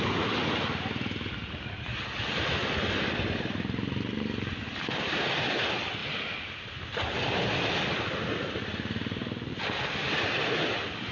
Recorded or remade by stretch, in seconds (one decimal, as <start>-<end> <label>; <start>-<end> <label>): 0.0-11.1 recorded